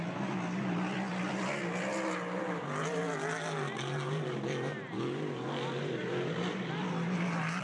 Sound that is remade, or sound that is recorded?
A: recorded